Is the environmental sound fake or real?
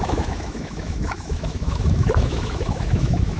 fake